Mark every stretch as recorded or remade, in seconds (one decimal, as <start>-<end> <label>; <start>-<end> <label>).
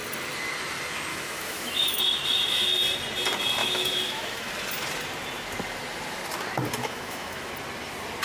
0.0-1.1 recorded; 1.1-2.0 remade; 2.0-3.6 recorded; 3.6-4.5 remade; 4.5-6.8 recorded; 6.8-7.5 remade; 7.5-8.2 recorded